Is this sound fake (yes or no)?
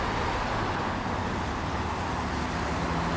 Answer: no